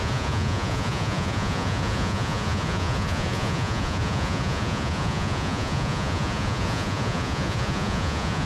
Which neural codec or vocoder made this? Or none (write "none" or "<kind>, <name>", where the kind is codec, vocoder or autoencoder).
vocoder, Vocos